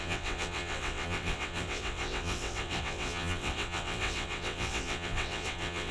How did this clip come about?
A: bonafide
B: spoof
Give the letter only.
B